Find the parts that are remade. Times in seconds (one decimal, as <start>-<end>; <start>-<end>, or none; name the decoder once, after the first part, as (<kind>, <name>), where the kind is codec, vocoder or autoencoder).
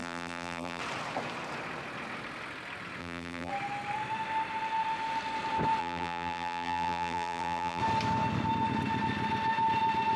0.0-0.8 (vocoder, BigVGAN v2); 3.0-3.5; 5.8-7.8